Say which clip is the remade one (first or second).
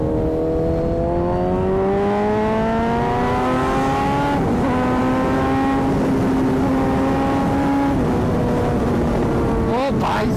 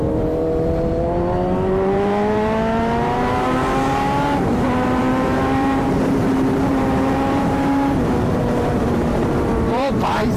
second